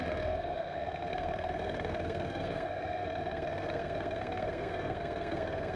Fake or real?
fake